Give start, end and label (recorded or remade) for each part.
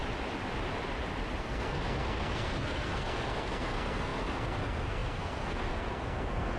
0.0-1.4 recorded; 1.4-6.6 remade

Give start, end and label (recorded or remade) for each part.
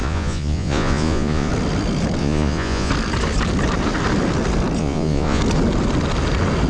0.0-1.5 remade; 1.5-2.2 recorded; 2.2-2.9 remade; 2.9-4.8 recorded; 4.8-5.4 remade; 5.4-6.7 recorded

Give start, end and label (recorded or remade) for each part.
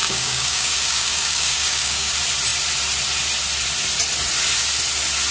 0.0-2.1 remade; 2.1-5.3 recorded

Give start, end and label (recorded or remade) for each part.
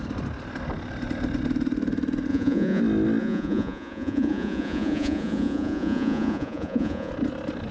0.0-2.3 recorded; 2.3-2.8 remade; 2.8-3.2 recorded; 3.2-7.1 remade; 7.1-7.7 recorded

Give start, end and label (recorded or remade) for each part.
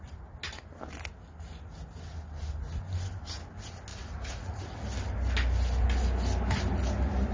0.0-3.9 recorded; 3.9-4.6 remade; 4.6-7.3 recorded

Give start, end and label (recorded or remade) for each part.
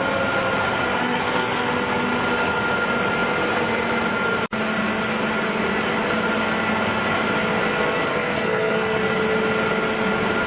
0.0-1.0 recorded; 1.0-1.7 remade; 1.7-8.1 recorded; 8.1-9.0 remade; 9.0-10.5 recorded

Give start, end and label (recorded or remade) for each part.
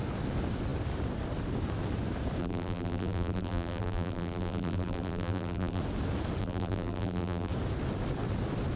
0.0-2.4 recorded; 2.4-5.8 remade; 5.8-6.4 recorded; 6.4-7.5 remade; 7.5-8.8 recorded